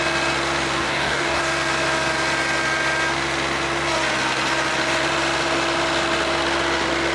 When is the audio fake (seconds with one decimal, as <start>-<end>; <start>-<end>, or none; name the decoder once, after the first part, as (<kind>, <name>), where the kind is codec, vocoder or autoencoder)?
0.8-1.4 (codec, DAC)